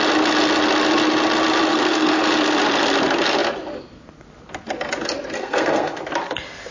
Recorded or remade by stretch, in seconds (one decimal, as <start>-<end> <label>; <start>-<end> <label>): 0.0-1.7 recorded; 1.7-2.2 remade; 2.2-5.4 recorded; 5.4-6.0 remade; 6.0-6.7 recorded